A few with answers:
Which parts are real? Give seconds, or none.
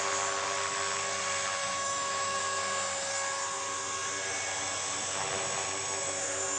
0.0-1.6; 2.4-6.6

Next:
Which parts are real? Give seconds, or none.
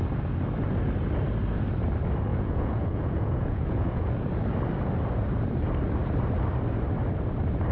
0.0-2.3; 4.3-7.7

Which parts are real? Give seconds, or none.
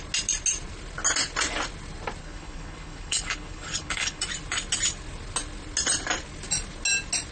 0.0-2.2; 4.2-7.3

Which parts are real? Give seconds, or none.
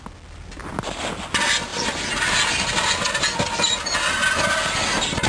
0.0-5.3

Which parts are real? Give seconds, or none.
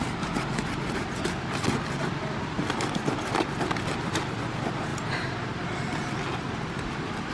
0.0-7.3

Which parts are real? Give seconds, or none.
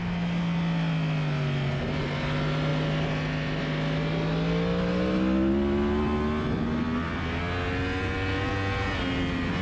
0.0-9.6